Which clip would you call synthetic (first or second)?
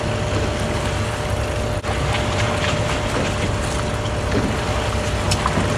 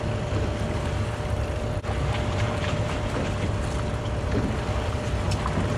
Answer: second